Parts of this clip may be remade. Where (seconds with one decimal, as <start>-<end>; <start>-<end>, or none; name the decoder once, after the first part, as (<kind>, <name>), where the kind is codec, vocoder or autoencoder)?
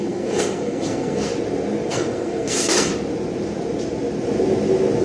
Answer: 0.0-1.3 (codec, SNAC); 1.9-2.9